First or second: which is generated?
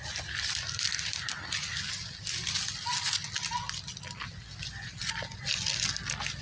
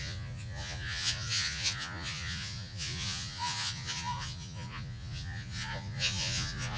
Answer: second